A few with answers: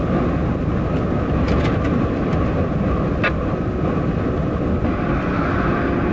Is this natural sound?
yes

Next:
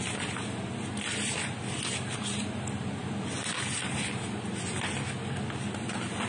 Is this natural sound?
yes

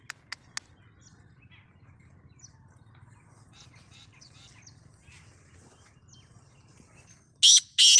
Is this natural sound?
yes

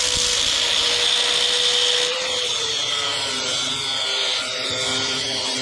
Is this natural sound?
yes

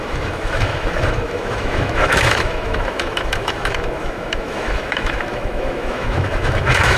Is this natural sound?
no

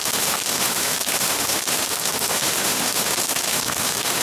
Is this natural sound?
no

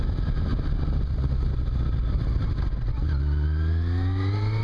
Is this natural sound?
yes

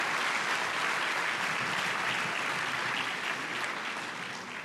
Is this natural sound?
yes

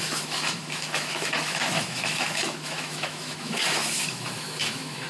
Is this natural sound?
no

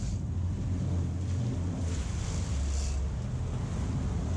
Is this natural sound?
yes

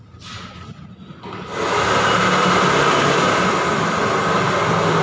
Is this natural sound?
yes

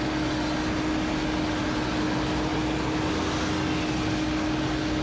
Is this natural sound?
yes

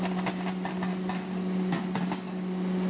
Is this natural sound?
yes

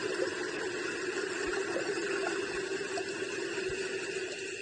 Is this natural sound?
yes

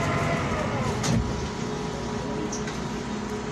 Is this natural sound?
yes